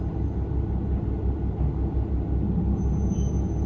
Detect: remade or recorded recorded